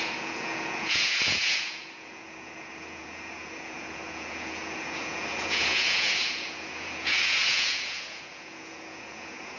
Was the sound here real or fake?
fake